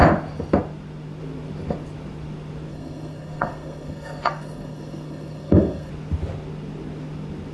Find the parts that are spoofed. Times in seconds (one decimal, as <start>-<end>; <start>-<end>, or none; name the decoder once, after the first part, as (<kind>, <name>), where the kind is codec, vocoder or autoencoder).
2.7-5.9 (codec, SNAC)